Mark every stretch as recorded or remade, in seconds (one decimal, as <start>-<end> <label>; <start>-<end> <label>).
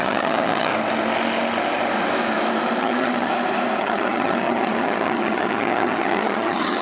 0.0-0.7 remade; 0.7-2.8 recorded; 2.8-3.3 remade; 3.3-3.8 recorded; 3.8-6.8 remade